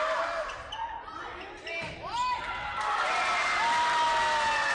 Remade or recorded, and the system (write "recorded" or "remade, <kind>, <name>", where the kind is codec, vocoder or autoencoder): recorded